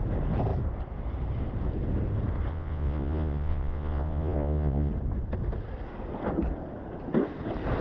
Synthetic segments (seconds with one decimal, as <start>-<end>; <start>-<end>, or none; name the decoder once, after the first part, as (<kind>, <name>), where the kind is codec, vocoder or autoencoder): 2.5-4.9 (vocoder, Vocos)